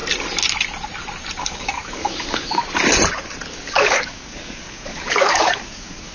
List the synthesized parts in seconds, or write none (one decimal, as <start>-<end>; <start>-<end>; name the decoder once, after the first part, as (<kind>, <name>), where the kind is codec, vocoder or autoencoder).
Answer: 1.4-2.6 (codec, DAC); 3.5-6.1